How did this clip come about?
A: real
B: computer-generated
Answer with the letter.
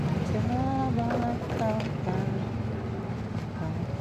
A